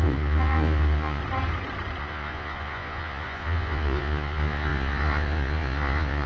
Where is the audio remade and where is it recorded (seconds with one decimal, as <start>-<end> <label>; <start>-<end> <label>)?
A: 0.0-1.2 remade; 1.2-2.0 recorded; 2.0-6.3 remade